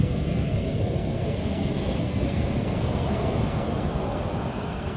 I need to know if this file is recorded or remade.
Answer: remade